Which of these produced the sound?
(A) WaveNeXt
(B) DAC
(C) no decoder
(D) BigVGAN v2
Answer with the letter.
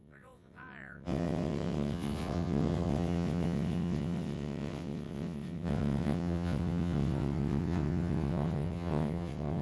A